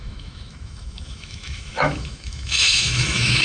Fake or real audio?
fake